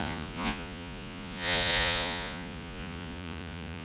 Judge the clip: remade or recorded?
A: remade